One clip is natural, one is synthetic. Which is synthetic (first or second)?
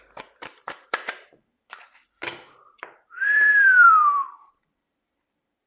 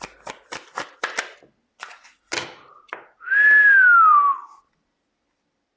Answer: first